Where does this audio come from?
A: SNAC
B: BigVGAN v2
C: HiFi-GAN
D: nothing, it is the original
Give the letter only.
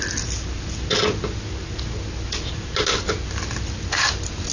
D